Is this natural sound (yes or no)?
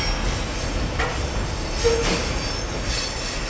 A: yes